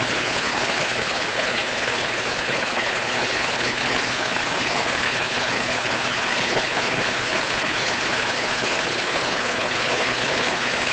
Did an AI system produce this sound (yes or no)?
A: yes